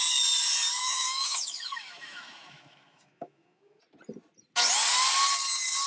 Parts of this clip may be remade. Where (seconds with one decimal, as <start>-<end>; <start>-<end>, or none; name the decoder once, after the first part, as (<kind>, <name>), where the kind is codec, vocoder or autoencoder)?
0.8-3.8 (autoencoder, DAC-VAE)